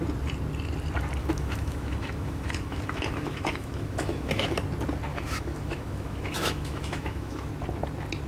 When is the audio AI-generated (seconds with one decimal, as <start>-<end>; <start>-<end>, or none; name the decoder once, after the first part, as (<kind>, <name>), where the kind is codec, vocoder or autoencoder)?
1.2-4.6 (autoencoder, DAC-VAE); 5.1-7.5